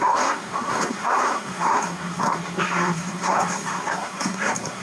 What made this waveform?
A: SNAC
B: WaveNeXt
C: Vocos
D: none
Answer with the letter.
A